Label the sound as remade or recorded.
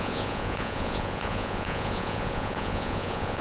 remade